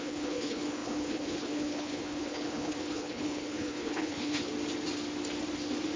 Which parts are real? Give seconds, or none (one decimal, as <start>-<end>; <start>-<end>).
4.5-6.0